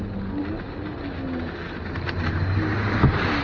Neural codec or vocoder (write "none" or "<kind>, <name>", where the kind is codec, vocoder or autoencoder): none